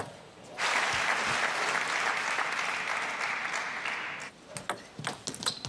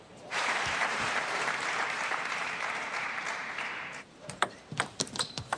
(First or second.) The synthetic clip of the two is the second